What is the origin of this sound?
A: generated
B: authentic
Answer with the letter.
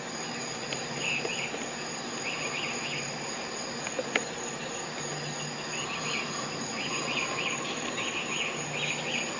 B